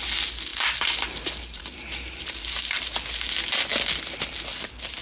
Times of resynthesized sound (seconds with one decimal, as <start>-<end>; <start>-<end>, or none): 0.5-2.8